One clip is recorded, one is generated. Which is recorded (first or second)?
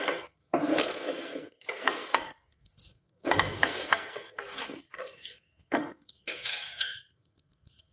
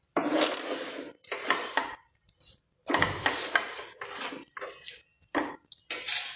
second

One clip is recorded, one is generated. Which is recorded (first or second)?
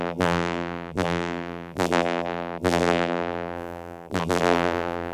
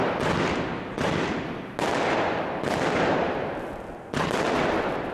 second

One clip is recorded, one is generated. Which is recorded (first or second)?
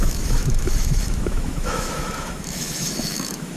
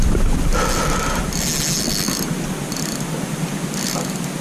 second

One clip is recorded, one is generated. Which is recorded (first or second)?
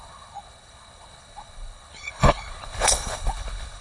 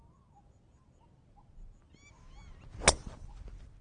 second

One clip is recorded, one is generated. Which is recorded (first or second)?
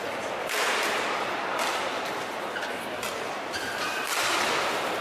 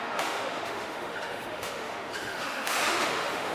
first